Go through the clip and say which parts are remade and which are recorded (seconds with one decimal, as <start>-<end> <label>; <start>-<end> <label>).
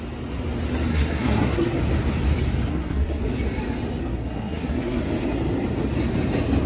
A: 0.0-0.9 recorded; 0.9-1.8 remade; 1.8-2.7 recorded; 2.7-3.2 remade; 3.2-4.0 recorded; 4.0-5.0 remade; 5.0-6.7 recorded